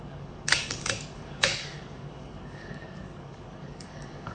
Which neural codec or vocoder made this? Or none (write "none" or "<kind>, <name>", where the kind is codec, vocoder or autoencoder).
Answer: codec, DAC